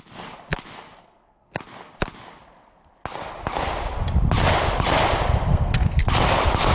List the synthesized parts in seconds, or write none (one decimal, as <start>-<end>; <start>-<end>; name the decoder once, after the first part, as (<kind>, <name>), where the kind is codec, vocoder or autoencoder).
1.0-1.6 (codec, SNAC); 5.5-6.0